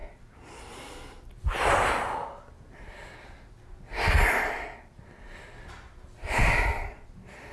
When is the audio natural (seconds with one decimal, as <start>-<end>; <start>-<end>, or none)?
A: 0.0-7.5